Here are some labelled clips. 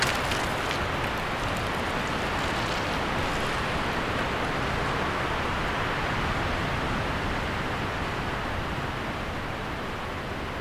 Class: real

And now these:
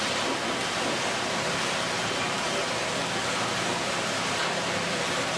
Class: real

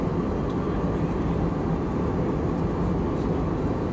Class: real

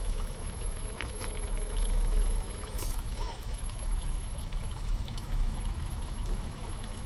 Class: fake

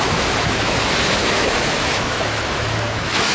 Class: fake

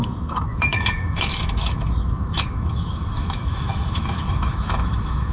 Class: fake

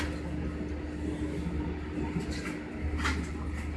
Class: real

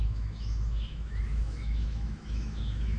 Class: fake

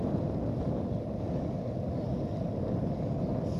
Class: real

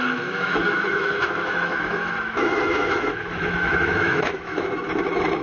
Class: fake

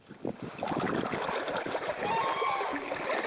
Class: real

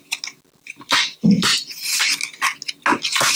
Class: real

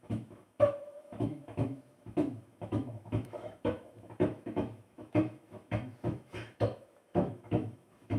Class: fake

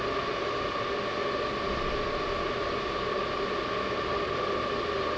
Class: real